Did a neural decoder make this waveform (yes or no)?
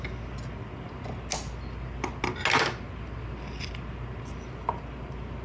no